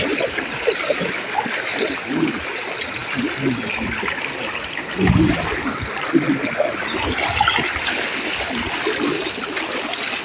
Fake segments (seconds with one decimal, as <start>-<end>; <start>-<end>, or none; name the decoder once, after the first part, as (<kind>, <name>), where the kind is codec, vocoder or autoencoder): none